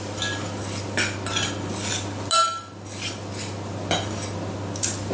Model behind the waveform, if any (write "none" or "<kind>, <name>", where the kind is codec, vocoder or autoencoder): none